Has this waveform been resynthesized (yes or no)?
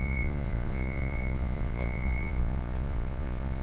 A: yes